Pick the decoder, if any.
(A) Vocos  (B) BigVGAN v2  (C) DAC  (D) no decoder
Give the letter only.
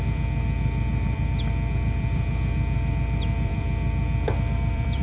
B